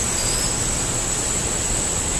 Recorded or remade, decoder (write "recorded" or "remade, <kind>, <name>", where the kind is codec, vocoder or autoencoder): recorded